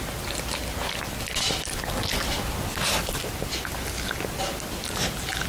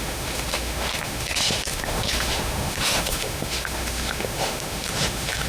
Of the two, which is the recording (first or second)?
first